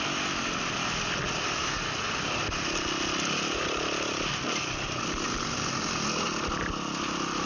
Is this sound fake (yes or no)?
no